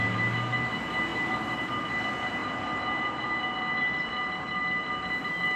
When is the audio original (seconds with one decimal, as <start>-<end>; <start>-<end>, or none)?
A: 0.0-1.1; 1.8-5.6